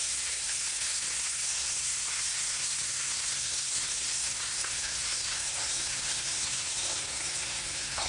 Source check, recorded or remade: remade